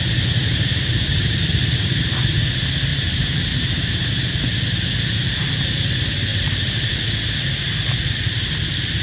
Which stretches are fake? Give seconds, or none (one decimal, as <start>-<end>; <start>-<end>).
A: 0.4-1.5; 2.9-4.1; 6.3-6.9